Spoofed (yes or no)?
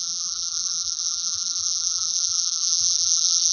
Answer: yes